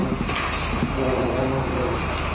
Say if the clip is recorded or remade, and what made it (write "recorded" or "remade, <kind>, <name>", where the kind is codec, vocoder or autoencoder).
recorded